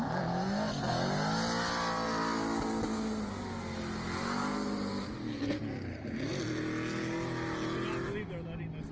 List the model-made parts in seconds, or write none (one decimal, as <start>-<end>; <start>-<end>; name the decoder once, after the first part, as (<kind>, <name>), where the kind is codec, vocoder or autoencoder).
none